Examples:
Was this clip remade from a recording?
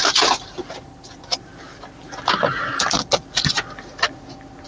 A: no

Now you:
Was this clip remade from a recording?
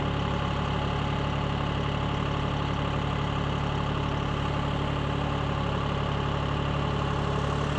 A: no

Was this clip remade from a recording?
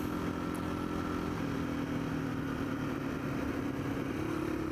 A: no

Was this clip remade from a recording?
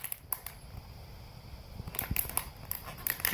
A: no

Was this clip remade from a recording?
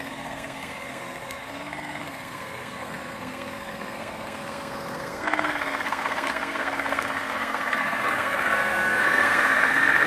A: yes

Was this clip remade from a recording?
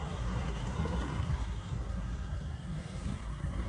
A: yes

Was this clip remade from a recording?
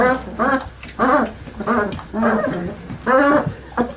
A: no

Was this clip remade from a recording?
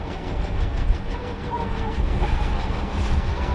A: yes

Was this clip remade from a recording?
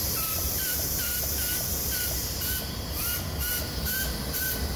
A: no